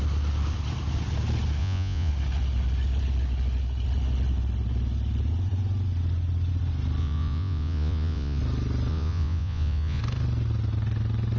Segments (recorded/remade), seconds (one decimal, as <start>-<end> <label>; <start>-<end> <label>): 0.0-1.6 recorded; 1.6-2.1 remade; 2.1-7.0 recorded; 7.0-8.4 remade; 8.4-8.9 recorded; 8.9-10.0 remade; 10.0-11.4 recorded